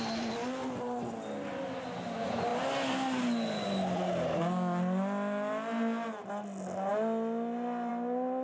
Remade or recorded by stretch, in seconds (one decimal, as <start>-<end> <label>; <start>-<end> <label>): 0.0-8.4 recorded